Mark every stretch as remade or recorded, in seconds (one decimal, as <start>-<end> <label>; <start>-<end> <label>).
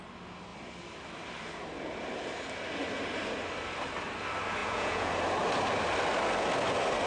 0.0-4.6 recorded; 4.6-5.1 remade; 5.1-7.1 recorded